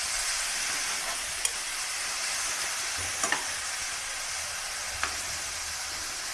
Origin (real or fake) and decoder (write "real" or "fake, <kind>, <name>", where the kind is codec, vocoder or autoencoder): real